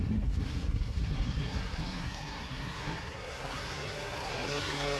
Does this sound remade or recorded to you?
remade